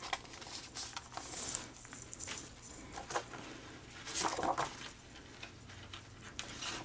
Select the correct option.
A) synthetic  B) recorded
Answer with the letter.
B